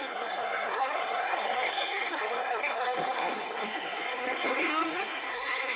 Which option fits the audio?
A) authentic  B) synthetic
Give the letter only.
B